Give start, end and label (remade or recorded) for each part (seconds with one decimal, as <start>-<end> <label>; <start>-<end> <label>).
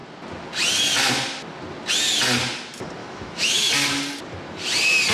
0.0-3.0 recorded; 3.0-3.7 remade; 3.7-5.1 recorded